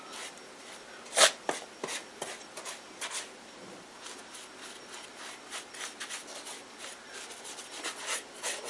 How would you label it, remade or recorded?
recorded